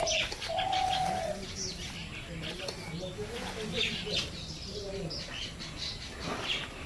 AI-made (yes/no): no